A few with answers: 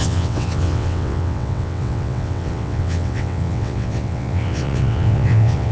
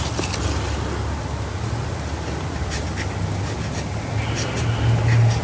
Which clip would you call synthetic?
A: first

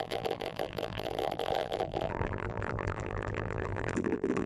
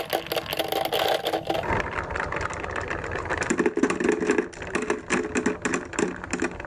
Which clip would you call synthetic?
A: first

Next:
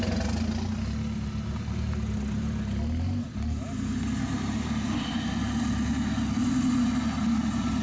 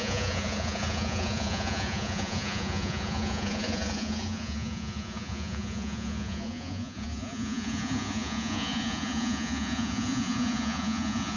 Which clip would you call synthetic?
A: second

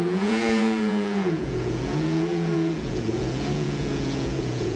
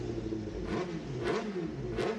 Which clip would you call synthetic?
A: first